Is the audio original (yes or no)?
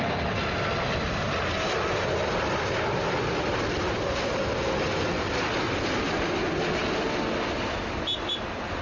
yes